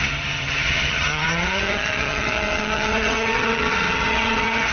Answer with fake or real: fake